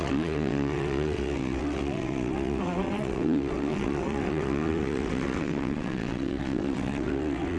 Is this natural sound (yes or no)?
no